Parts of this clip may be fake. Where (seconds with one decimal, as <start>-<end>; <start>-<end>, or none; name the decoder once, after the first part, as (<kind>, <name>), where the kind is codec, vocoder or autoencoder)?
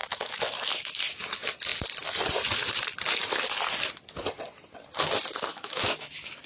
0.0-1.0 (autoencoder, DAC-VAE); 5.5-6.5